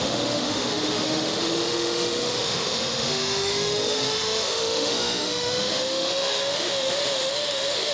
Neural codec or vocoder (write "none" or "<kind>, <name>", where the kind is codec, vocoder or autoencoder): autoencoder, DAC-VAE